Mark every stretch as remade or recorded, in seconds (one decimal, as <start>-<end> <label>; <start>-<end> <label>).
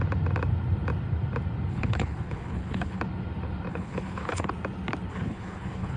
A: 0.0-1.7 recorded; 1.7-3.0 remade; 3.0-3.7 recorded; 3.7-4.5 remade; 4.5-5.1 recorded; 5.1-6.0 remade